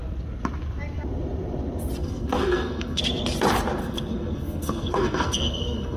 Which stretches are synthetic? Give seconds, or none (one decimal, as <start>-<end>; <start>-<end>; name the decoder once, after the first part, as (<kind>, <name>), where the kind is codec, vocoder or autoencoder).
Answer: 2.0-3.0 (codec, SNAC); 3.8-6.0